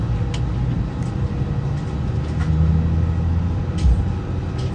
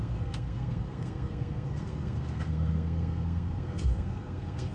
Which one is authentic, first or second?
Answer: first